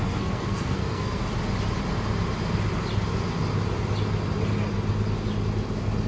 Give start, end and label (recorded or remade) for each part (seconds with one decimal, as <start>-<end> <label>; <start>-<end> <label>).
0.0-1.3 remade; 1.3-6.1 recorded